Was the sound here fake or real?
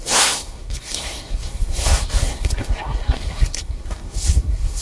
fake